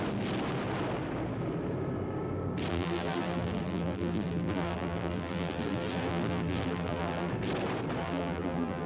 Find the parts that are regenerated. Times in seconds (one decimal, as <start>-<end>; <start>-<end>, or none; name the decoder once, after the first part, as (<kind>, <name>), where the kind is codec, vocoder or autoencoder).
2.7-7.3 (vocoder, BigVGAN v2); 8.0-8.9

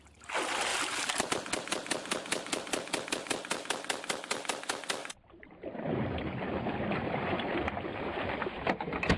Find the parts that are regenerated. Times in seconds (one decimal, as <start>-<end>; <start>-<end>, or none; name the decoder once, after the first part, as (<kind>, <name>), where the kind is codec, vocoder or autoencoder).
0.7-1.3 (vocoder, BigVGAN v2); 5.0-8.3

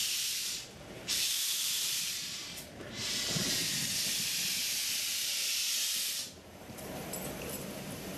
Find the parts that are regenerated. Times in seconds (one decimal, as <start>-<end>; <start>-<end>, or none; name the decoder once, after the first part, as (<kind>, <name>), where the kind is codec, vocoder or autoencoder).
0.0-2.4 (vocoder, BigVGAN v2); 6.5-8.2